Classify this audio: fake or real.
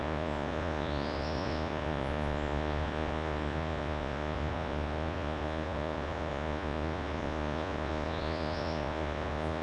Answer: fake